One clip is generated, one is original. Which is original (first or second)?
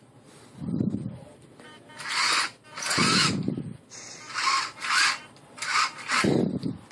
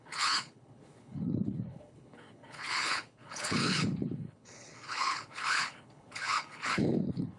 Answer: first